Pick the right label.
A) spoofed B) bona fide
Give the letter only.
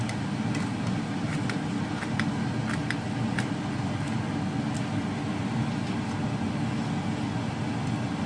B